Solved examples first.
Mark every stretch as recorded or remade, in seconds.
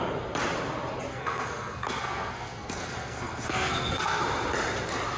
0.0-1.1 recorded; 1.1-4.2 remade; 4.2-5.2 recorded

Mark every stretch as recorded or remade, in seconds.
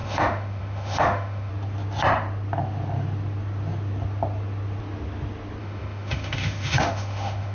0.0-1.5 remade; 1.5-5.6 recorded; 5.6-7.5 remade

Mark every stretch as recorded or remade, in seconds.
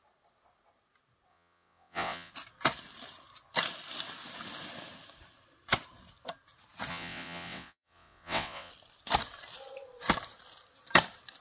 0.0-1.3 recorded; 1.3-2.3 remade; 2.3-6.9 recorded; 6.9-8.7 remade; 8.7-11.4 recorded